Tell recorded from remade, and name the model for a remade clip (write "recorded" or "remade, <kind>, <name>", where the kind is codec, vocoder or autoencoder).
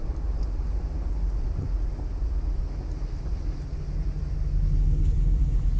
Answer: recorded